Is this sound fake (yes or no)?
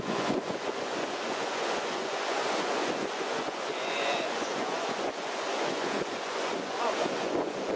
yes